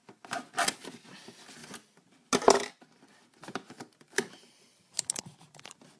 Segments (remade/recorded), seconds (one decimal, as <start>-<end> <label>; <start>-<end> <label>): 0.0-6.0 recorded